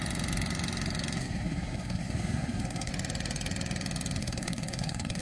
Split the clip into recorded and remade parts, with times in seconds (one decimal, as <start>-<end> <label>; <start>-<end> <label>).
0.0-1.2 recorded; 1.2-2.9 remade; 2.9-4.2 recorded; 4.2-5.2 remade